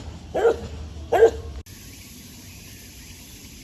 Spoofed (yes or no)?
no